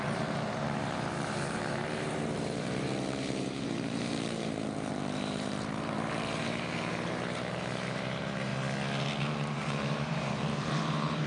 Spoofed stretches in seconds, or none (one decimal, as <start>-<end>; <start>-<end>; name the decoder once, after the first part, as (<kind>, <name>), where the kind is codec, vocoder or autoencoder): 0.0-8.5 (vocoder, BigVGAN v2); 9.2-11.3